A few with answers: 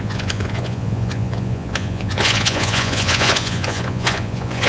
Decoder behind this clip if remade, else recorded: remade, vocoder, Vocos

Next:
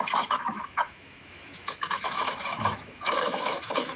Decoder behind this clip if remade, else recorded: remade, autoencoder, DAC-VAE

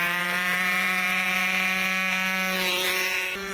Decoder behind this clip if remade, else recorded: remade, vocoder, Vocos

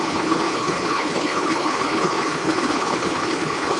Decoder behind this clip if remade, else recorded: remade, codec, HILCodec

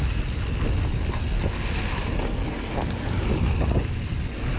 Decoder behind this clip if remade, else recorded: recorded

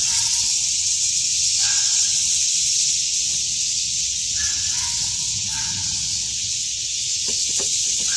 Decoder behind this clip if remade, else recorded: remade, vocoder, WaveNeXt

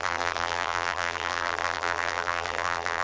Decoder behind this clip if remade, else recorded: remade, vocoder, BigVGAN v2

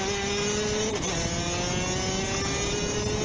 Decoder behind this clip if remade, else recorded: recorded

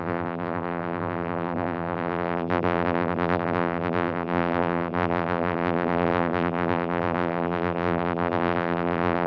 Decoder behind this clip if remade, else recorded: remade, vocoder, BigVGAN v2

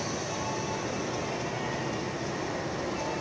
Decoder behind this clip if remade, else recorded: recorded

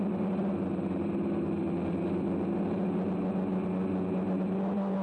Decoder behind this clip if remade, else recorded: recorded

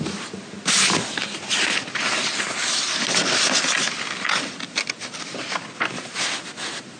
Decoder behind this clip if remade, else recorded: recorded